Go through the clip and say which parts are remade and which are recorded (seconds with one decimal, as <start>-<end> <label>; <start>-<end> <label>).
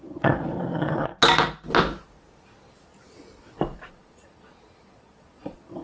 0.0-1.1 remade; 1.1-3.9 recorded; 3.9-5.8 remade